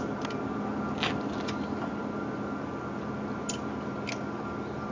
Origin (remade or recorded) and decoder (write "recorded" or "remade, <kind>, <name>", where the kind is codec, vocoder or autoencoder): recorded